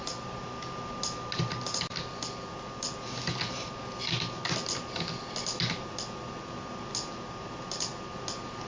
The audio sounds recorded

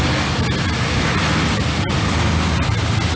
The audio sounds recorded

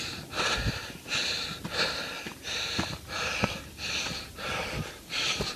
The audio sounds recorded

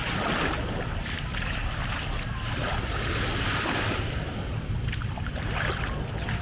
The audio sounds recorded